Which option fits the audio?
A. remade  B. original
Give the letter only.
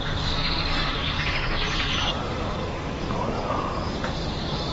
A